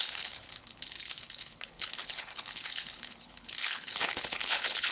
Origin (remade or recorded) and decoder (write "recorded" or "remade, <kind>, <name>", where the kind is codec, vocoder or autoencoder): remade, codec, HILCodec